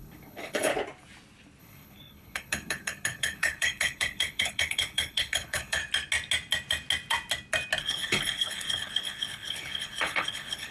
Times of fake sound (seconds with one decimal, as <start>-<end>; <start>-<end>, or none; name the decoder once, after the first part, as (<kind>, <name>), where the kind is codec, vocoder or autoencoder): 0.0-0.7 (codec, HILCodec); 1.6-5.8; 7.8-10.7